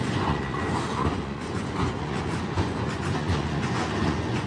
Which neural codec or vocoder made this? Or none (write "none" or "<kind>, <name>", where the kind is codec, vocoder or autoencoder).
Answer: vocoder, Vocos